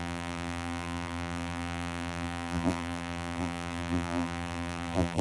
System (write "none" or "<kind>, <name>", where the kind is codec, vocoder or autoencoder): vocoder, BigVGAN v2